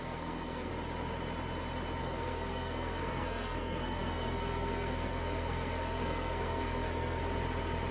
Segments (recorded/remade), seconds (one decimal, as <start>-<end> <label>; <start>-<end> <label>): 0.0-0.7 remade; 0.7-2.0 recorded; 2.0-7.2 remade; 7.2-7.9 recorded